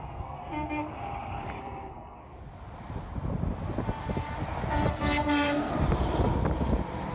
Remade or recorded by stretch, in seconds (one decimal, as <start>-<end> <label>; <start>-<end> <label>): 0.0-0.9 remade; 0.9-1.6 recorded; 1.6-2.2 remade; 2.2-4.9 recorded; 4.9-5.7 remade; 5.7-7.1 recorded